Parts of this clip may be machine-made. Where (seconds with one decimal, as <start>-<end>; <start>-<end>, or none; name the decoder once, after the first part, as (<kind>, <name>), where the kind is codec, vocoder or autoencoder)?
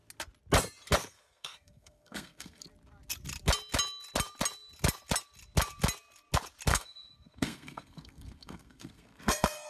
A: 1.0-2.6 (codec, SNAC); 6.7-9.7